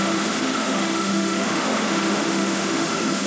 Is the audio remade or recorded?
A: remade